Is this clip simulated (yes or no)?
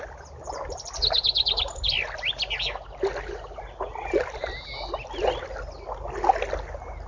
no